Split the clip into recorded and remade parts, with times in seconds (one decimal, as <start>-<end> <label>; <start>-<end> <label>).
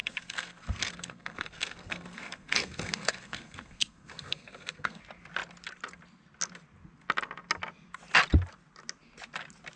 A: 0.0-5.0 remade; 5.0-9.8 recorded